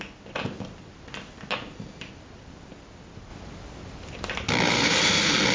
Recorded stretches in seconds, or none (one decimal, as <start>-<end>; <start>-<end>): 0.0-5.5